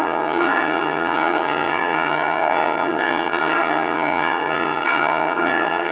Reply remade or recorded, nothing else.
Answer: remade